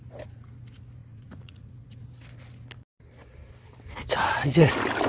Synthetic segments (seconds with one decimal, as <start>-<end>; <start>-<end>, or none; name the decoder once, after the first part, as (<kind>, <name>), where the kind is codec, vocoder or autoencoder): 1.0-1.7 (vocoder, Vocos)